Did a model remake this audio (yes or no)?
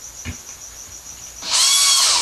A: no